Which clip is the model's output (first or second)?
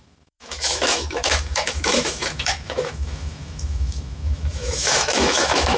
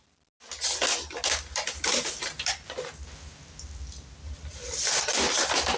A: first